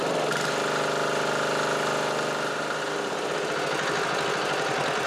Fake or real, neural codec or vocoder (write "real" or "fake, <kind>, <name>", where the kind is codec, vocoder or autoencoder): real